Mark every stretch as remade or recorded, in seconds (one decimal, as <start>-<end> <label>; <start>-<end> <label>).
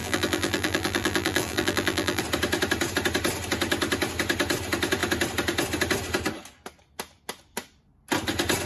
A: 0.0-2.2 remade; 2.2-8.7 recorded